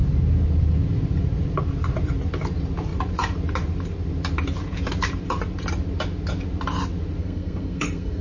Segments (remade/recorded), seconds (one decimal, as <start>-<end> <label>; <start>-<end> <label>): 0.0-7.2 recorded; 7.2-8.2 remade